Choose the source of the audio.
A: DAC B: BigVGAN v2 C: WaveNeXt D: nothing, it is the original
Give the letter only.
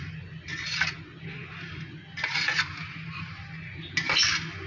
D